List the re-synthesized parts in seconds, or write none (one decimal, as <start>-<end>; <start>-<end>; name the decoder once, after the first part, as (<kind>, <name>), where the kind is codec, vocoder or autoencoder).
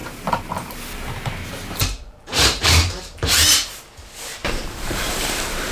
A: 1.8-3.4 (vocoder, BigVGAN v2); 4.4-5.7